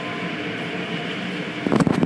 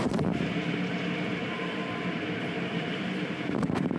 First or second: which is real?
first